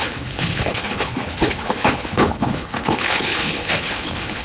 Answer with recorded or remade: remade